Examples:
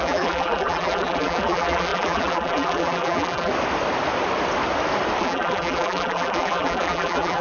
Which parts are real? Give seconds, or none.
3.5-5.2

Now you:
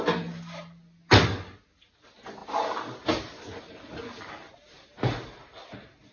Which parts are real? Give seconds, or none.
0.0-6.1

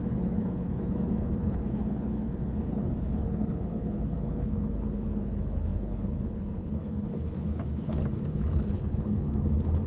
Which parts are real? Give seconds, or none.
none

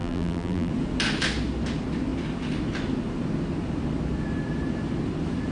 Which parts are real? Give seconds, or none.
0.7-5.5

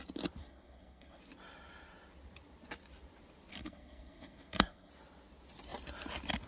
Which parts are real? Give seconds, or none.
0.0-0.4; 1.2-3.5; 4.9-6.5

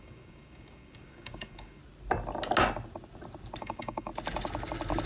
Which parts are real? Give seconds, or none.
1.8-3.6; 4.1-5.1